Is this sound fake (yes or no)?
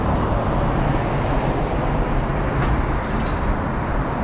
no